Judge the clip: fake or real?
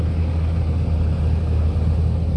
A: real